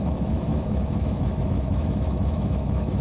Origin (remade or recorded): remade